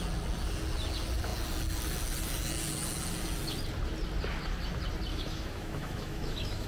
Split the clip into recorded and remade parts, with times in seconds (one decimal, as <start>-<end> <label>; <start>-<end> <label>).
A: 0.0-5.1 recorded; 5.1-6.7 remade